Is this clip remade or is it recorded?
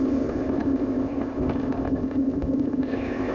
remade